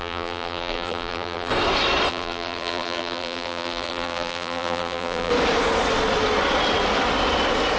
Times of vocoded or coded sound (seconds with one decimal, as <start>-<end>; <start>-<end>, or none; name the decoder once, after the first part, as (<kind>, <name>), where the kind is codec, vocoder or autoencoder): 0.0-1.5 (vocoder, BigVGAN v2); 2.1-5.3